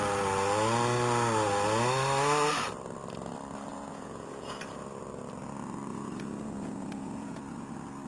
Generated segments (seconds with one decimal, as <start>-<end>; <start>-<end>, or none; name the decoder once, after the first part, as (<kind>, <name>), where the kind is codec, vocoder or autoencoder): 3.7-4.6 (vocoder, Vocos); 5.9-7.4